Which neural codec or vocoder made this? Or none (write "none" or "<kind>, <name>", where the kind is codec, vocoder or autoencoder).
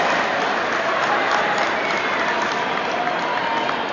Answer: none